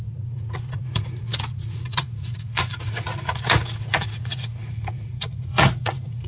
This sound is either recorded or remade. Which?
remade